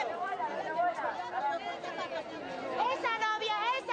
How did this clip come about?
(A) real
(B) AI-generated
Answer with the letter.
A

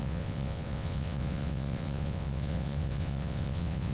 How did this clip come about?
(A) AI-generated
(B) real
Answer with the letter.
A